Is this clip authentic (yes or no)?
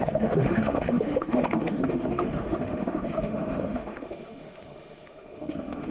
no